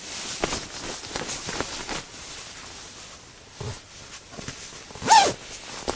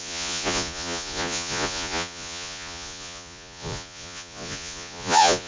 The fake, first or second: second